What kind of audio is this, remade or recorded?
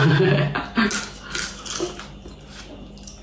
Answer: recorded